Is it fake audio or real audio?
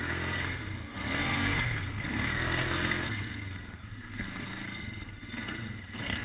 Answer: fake